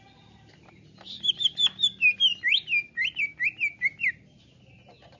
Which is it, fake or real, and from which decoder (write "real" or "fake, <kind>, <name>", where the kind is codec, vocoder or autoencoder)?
real